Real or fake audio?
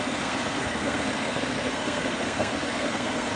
fake